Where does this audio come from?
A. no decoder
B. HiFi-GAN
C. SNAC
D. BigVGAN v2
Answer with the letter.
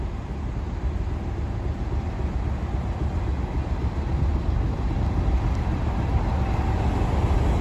A